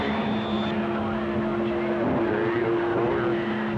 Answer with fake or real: real